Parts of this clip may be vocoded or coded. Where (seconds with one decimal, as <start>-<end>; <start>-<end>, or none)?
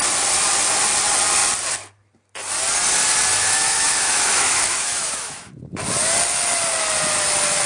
3.4-5.5